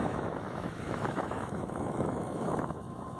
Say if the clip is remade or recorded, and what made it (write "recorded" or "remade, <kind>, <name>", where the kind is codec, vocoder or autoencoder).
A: remade, autoencoder, DAC-VAE